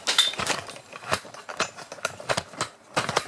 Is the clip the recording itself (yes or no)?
yes